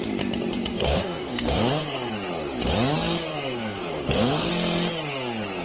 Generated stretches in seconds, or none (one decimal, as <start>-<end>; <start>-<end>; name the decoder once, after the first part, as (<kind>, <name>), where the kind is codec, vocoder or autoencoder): 0.7-2.1 (codec, SNAC); 3.3-4.5